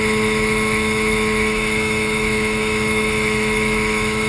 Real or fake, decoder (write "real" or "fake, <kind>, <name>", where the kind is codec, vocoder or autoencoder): fake, autoencoder, DAC-VAE